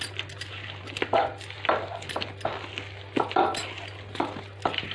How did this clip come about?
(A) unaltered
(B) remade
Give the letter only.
A